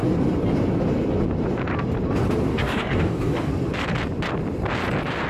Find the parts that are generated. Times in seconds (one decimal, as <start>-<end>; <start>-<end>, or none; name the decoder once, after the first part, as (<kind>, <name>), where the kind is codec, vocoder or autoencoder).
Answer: 2.5-3.5 (codec, DAC)